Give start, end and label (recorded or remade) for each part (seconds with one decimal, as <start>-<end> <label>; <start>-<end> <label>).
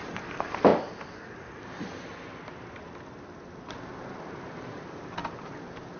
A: 0.0-0.7 remade; 0.7-3.7 recorded; 3.7-6.0 remade